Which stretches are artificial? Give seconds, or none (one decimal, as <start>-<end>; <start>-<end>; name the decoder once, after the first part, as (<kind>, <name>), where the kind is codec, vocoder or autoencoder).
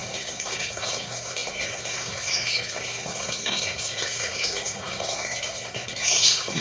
0.0-6.6 (codec, SNAC)